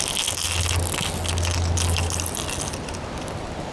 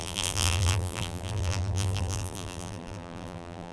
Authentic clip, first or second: first